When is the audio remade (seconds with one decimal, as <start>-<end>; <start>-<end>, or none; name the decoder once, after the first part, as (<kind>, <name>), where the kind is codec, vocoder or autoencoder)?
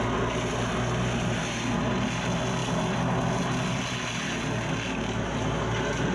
none